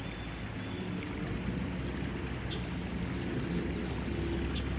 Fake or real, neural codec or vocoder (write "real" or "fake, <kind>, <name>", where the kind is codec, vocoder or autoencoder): real